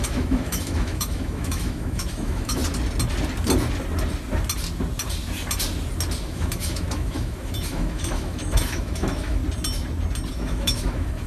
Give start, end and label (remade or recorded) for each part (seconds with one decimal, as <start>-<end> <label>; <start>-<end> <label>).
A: 0.0-2.6 remade; 2.6-6.2 recorded; 6.2-9.4 remade; 9.4-10.3 recorded; 10.3-11.3 remade